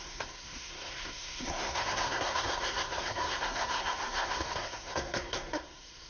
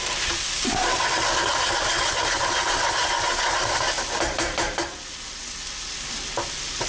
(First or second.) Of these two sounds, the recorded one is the second